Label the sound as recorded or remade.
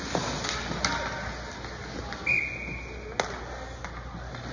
recorded